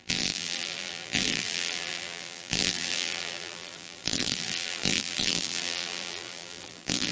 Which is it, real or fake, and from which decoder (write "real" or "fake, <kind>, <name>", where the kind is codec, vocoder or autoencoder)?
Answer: fake, vocoder, BigVGAN v2